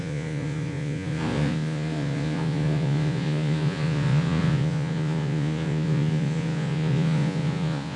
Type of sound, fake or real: fake